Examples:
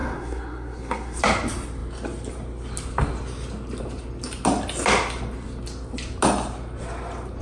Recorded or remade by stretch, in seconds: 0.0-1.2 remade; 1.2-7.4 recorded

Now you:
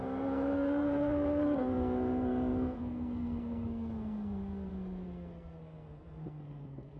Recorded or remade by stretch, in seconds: 0.0-7.0 remade

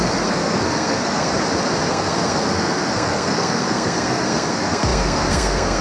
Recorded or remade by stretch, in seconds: 0.0-1.3 remade; 1.3-1.9 recorded; 1.9-5.8 remade

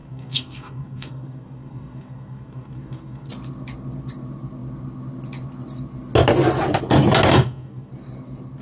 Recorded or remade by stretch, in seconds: 0.0-3.3 remade; 3.3-7.3 recorded; 7.3-7.9 remade; 7.9-8.6 recorded

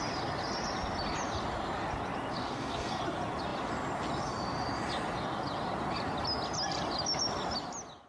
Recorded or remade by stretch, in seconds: 0.0-2.4 recorded; 2.4-3.0 remade; 3.0-8.1 recorded

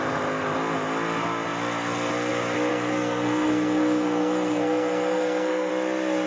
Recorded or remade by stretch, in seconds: 0.0-2.7 recorded; 2.7-5.7 remade; 5.7-6.3 recorded